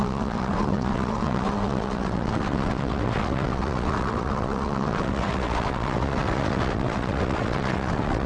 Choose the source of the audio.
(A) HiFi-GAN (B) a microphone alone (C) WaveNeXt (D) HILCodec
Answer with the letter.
C